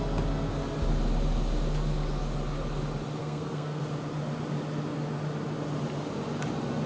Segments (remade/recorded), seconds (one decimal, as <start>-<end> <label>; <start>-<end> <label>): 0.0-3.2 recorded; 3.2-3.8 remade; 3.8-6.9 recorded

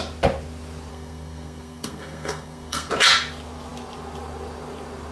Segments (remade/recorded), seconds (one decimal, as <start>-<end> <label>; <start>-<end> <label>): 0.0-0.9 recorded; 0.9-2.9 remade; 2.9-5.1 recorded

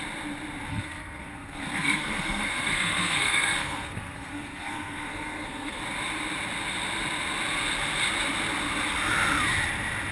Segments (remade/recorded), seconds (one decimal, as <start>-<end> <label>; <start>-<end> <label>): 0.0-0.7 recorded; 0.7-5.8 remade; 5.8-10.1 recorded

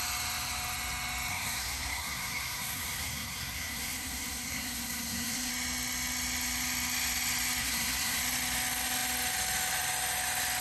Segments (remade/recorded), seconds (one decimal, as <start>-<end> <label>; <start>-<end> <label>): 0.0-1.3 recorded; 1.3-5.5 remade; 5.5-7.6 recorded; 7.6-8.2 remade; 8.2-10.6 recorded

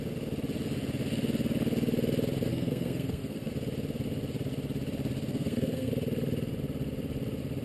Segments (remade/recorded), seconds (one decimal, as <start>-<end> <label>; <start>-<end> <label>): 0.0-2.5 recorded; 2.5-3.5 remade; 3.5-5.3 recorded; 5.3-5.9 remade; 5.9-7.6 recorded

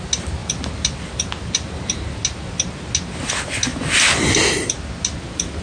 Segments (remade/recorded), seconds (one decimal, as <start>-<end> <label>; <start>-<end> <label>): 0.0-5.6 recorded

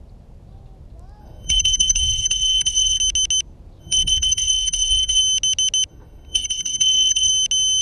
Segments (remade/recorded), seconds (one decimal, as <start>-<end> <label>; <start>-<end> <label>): 0.0-1.2 recorded; 1.2-3.0 remade; 3.0-3.8 recorded; 3.8-5.2 remade; 5.2-5.9 recorded; 5.9-7.3 remade; 7.3-7.8 recorded

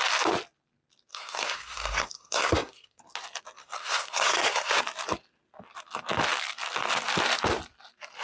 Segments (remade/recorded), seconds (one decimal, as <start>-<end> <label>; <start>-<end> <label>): 0.0-1.1 recorded; 1.1-3.0 remade; 3.0-3.6 recorded; 3.6-4.8 remade; 4.8-8.2 recorded